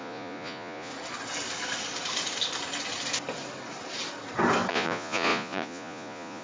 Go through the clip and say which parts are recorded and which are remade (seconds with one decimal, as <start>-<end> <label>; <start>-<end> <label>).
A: 0.0-0.9 remade; 0.9-4.7 recorded; 4.7-6.4 remade